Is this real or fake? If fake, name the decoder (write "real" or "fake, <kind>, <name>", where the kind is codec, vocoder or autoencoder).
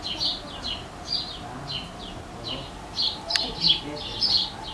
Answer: real